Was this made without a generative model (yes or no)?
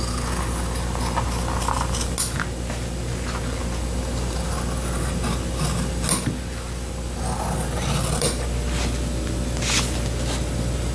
yes